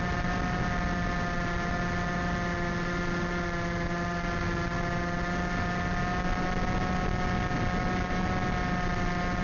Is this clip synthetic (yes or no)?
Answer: no